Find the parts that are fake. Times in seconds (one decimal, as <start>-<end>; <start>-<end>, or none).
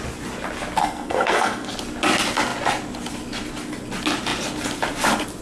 0.8-1.7